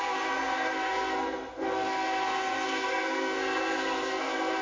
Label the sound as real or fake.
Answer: fake